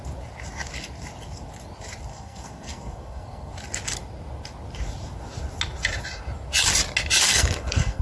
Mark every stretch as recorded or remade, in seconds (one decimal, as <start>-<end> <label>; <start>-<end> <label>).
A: 0.0-2.1 recorded; 2.1-3.5 remade; 3.5-7.3 recorded; 7.3-8.0 remade

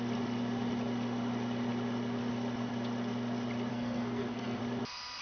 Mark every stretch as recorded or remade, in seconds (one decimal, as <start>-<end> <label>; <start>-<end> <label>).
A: 0.0-3.7 recorded; 3.7-4.6 remade; 4.6-5.2 recorded

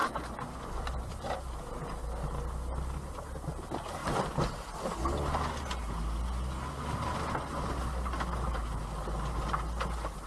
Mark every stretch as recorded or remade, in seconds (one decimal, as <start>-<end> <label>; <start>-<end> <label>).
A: 0.0-1.1 remade; 1.1-10.3 recorded

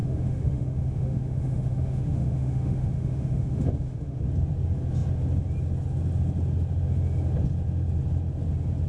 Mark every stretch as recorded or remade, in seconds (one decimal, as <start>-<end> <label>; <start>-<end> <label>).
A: 0.0-4.2 remade; 4.2-8.9 recorded

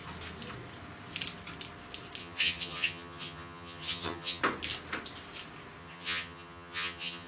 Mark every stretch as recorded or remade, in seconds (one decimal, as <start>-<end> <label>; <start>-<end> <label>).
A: 0.0-2.2 recorded; 2.2-4.4 remade; 4.4-5.8 recorded; 5.8-7.3 remade

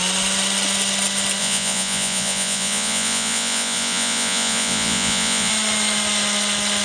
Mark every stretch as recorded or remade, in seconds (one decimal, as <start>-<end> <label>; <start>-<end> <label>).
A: 0.0-1.4 recorded; 1.4-5.5 remade; 5.5-6.8 recorded